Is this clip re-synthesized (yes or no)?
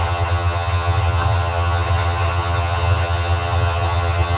yes